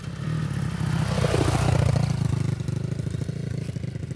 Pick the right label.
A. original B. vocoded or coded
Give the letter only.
A